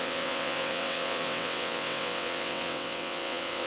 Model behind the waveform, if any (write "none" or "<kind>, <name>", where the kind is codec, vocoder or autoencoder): vocoder, WaveNeXt